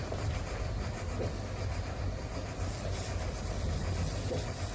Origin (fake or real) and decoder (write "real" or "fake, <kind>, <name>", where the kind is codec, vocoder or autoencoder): fake, vocoder, BigVGAN v2